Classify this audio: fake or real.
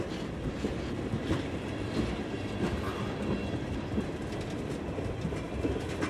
real